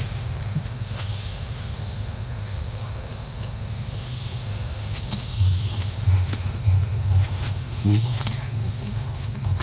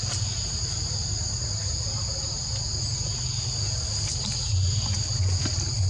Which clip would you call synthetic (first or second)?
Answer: first